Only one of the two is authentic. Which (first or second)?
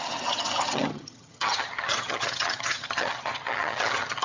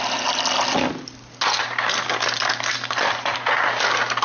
second